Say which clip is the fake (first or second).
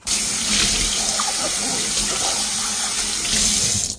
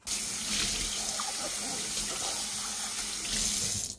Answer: first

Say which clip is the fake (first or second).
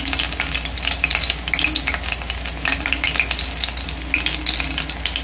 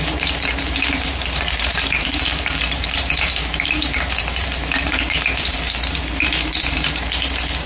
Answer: second